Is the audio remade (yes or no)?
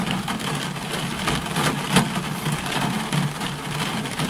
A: no